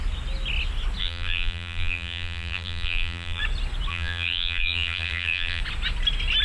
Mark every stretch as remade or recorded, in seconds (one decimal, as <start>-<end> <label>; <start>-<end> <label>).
0.0-1.0 recorded; 1.0-3.4 remade; 3.4-3.9 recorded; 3.9-5.6 remade; 5.6-6.4 recorded